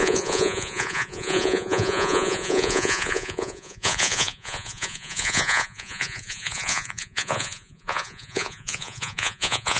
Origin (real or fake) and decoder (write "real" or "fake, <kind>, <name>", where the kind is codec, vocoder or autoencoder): fake, vocoder, Vocos